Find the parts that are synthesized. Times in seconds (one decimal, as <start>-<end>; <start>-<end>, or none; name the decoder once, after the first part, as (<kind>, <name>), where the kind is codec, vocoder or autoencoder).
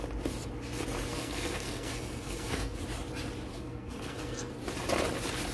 1.1-2.8 (codec, SNAC); 3.5-4.5